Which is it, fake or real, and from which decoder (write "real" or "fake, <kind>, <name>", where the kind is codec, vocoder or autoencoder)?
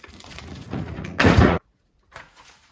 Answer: fake, vocoder, Vocos